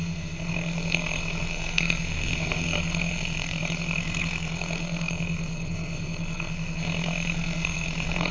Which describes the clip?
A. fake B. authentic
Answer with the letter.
A